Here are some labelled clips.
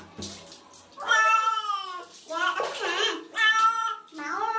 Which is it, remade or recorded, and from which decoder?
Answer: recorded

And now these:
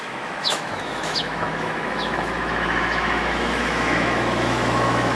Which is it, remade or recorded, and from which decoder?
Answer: remade, autoencoder, DAC-VAE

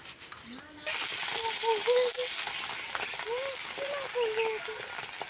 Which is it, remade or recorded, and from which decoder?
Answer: recorded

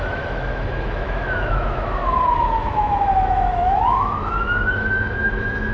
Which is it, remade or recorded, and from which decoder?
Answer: remade, autoencoder, DAC-VAE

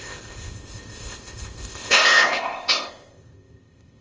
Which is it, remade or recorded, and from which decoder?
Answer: remade, codec, ZipCodec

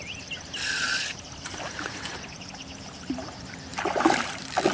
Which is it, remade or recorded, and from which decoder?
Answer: recorded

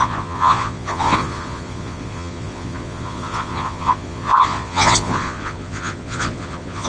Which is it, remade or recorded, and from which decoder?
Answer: remade, vocoder, Vocos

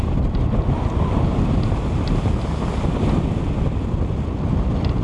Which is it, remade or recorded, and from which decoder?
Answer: recorded